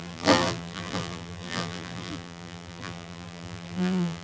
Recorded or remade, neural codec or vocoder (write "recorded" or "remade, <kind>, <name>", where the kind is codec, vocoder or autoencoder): remade, vocoder, BigVGAN v2